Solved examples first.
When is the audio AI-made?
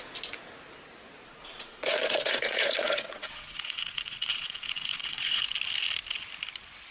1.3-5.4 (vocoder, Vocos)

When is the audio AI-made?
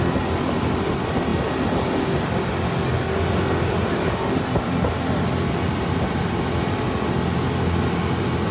none